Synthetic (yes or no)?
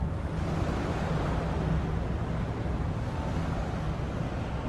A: no